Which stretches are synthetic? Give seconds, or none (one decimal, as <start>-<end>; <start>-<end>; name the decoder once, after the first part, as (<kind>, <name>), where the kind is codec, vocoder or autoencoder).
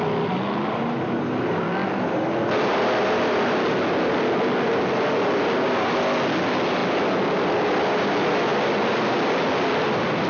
8.5-9.4 (vocoder, BigVGAN v2)